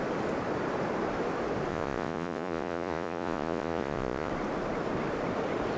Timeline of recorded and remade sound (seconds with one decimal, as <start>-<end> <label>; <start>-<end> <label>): 0.0-1.7 recorded; 1.7-4.3 remade; 4.3-5.8 recorded